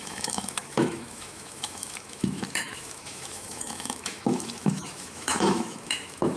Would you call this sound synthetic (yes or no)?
yes